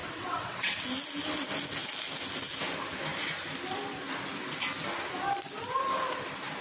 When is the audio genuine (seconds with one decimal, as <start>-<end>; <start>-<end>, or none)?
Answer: 0.8-6.6